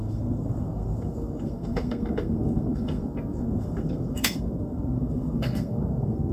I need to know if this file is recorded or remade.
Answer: remade